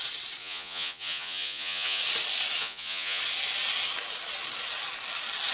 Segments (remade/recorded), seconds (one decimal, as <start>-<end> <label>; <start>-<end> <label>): 0.0-0.4 recorded; 0.4-2.0 remade; 2.0-2.6 recorded; 2.6-3.2 remade; 3.2-5.5 recorded